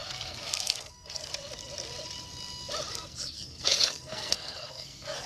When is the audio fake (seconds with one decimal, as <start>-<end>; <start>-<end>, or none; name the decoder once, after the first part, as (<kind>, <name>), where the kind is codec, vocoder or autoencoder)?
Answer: 0.0-1.3 (codec, SNAC); 2.9-5.3